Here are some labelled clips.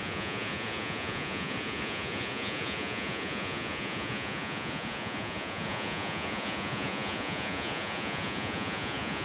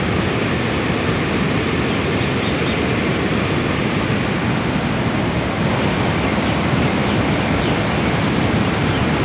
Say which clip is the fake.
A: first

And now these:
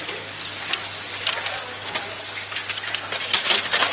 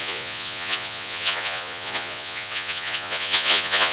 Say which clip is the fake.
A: second